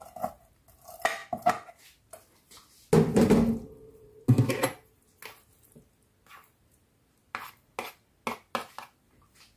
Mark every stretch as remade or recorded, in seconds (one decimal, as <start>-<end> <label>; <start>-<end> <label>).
0.0-9.6 recorded